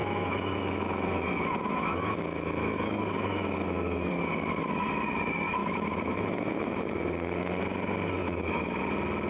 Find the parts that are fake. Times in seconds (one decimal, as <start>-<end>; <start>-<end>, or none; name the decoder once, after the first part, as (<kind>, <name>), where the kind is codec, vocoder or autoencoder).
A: 0.0-4.1 (autoencoder, DAC-VAE); 5.6-7.6; 8.2-8.8